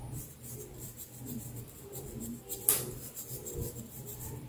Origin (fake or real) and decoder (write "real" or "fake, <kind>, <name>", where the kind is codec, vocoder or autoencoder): fake, vocoder, BigVGAN v2